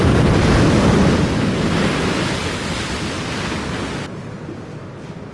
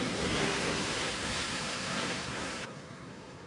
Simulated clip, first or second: second